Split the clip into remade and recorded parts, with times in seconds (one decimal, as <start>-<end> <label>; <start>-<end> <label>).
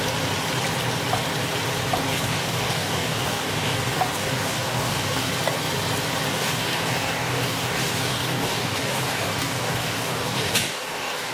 0.0-2.1 recorded; 2.1-5.3 remade; 5.3-6.3 recorded; 6.3-11.3 remade